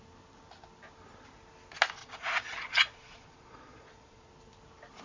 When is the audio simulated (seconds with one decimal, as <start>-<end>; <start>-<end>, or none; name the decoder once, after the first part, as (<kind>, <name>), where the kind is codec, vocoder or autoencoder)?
2.0-4.3 (vocoder, Vocos)